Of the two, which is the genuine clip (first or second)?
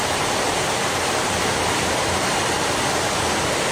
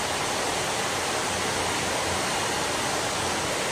second